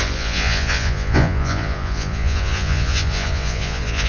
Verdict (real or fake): fake